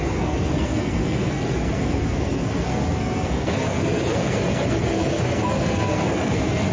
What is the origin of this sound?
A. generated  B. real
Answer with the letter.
A